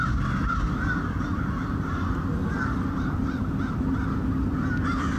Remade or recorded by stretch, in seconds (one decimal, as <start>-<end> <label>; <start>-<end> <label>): 0.0-5.2 recorded